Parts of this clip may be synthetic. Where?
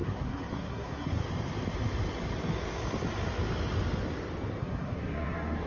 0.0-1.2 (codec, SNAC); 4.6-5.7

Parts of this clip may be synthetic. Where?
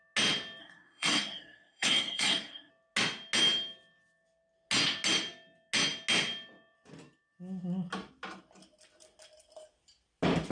0.6-2.7 (codec, SNAC)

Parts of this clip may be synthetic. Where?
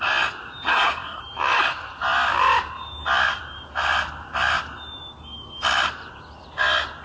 0.7-1.2 (codec, SNAC)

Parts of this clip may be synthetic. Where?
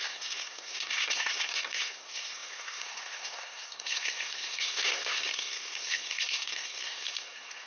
0.0-7.7 (codec, SNAC)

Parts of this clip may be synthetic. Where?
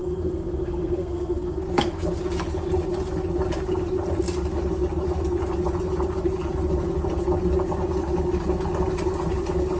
0.0-1.6 (codec, SNAC)